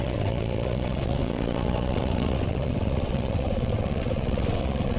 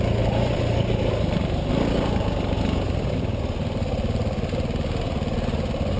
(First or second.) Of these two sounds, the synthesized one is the first